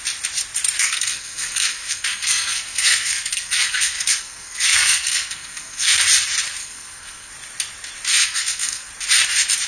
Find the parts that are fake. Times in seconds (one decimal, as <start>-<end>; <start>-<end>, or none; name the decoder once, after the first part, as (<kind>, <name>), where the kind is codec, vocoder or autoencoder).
0.8-6.0 (codec, SNAC); 6.6-7.3; 8.1-8.9